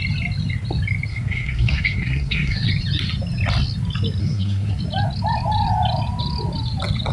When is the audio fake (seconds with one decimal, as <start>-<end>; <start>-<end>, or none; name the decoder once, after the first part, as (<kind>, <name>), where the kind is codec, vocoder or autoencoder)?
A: 1.1-2.7 (codec, SNAC); 4.2-4.8